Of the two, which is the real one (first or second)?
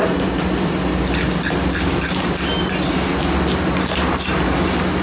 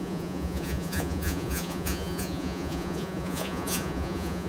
first